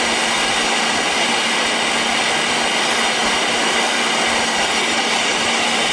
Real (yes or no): yes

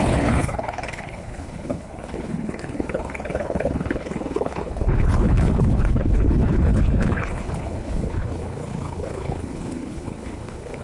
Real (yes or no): no